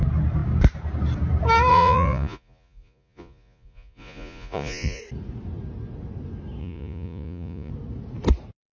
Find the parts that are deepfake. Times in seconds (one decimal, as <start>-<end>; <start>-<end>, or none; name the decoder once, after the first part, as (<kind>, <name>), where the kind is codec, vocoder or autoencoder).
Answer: 1.7-5.0 (vocoder, Vocos); 6.6-7.7